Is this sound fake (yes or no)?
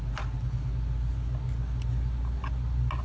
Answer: no